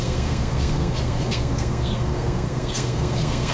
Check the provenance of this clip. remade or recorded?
remade